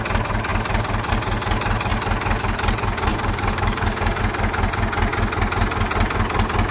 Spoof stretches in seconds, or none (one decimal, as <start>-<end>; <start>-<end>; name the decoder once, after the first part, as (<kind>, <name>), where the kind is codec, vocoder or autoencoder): 3.1-4.2 (codec, DAC)